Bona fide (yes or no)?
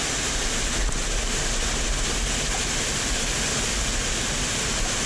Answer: yes